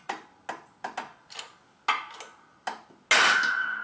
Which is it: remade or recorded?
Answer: recorded